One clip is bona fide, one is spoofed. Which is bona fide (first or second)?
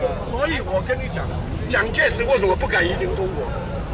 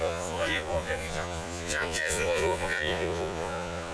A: first